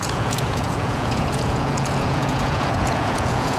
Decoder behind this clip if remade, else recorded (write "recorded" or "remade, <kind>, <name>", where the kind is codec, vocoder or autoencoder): remade, vocoder, Vocos